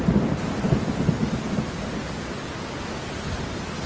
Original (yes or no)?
yes